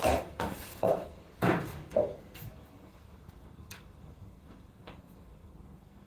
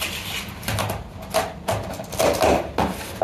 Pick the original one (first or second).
second